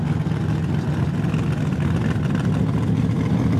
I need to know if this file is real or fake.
real